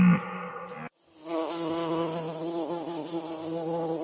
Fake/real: real